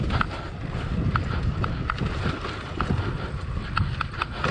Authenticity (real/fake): real